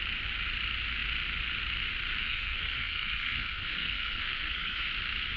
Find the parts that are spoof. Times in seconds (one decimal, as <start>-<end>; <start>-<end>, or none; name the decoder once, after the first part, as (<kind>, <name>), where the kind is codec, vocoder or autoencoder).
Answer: 2.2-4.9 (codec, SNAC)